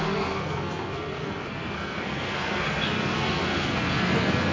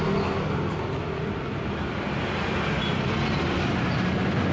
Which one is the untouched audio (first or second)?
second